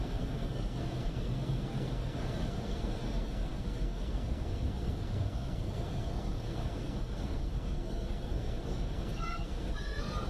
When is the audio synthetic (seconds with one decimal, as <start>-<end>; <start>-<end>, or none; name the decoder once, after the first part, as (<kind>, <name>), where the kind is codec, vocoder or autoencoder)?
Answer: 0.0-10.3 (codec, SNAC)